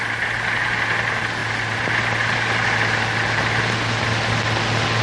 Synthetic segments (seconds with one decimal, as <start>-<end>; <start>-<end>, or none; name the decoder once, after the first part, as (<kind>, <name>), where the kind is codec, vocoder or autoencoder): none

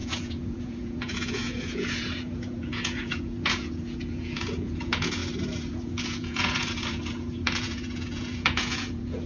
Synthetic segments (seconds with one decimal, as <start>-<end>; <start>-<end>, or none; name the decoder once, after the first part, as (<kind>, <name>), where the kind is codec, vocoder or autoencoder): 0.0-5.2 (vocoder, Vocos); 5.7-9.3

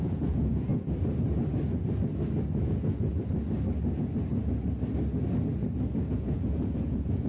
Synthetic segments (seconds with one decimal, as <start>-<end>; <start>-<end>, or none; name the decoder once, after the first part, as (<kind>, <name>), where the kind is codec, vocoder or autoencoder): 0.0-0.7 (vocoder, Vocos); 2.6-3.1; 6.1-7.3

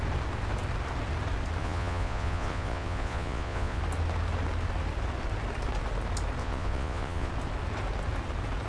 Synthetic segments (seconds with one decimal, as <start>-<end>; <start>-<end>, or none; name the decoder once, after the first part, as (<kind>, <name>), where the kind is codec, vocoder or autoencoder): 1.6-3.8 (vocoder, Vocos); 6.4-7.3

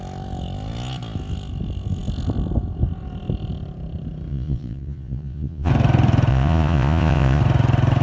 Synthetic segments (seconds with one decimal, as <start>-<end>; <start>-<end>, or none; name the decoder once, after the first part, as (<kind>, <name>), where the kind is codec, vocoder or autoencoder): 4.3-5.7 (vocoder, Vocos); 6.3-7.4

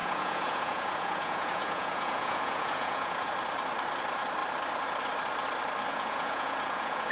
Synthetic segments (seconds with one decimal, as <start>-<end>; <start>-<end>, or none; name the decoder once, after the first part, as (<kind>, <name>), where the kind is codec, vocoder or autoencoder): 0.0-3.3 (vocoder, Vocos); 5.9-7.1

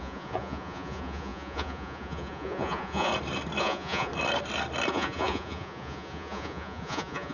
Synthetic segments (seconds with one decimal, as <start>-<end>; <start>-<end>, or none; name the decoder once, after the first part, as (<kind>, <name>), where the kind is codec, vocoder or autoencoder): 0.0-3.1 (vocoder, Vocos); 3.6-4.1; 4.9-7.3